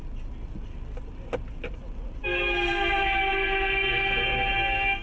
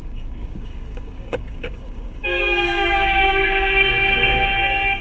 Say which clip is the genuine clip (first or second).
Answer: first